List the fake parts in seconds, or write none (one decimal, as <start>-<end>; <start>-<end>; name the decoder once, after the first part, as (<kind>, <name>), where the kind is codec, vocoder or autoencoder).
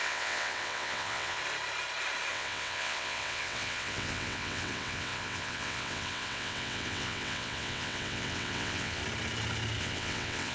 0.0-1.4 (vocoder, WaveNeXt); 2.3-9.0; 9.8-10.5